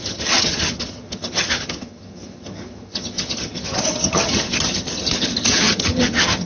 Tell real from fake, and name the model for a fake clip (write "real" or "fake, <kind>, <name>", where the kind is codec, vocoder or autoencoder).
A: fake, vocoder, HiFi-GAN